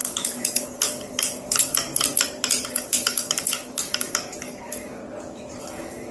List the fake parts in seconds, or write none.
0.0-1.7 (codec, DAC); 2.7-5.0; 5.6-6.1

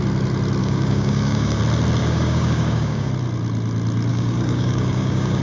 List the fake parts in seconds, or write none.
0.6-1.6 (codec, DAC); 2.0-3.1; 4.1-5.4

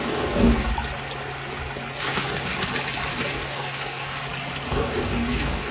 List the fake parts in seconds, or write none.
0.0-0.7 (codec, DAC); 2.0-2.5; 3.2-4.2; 4.7-5.7

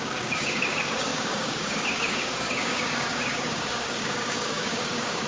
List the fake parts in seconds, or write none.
0.0-5.3 (codec, DAC)

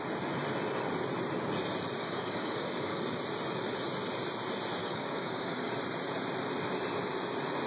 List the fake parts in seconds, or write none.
2.0-3.0 (codec, DAC); 4.8-5.7

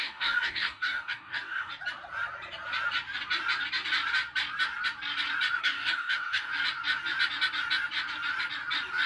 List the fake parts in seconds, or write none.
0.0-1.7 (codec, DAC); 5.6-6.5

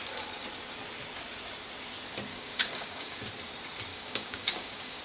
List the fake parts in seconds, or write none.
2.3-3.2 (codec, DAC); 3.9-5.0

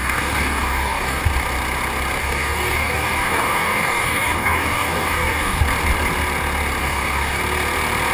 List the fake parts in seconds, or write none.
0.0-1.2 (codec, DAC); 2.2-5.6; 6.8-7.4